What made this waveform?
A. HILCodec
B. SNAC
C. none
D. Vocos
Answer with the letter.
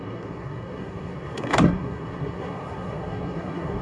B